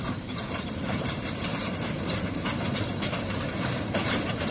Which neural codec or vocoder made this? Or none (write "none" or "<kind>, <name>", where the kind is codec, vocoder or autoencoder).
vocoder, BigVGAN v2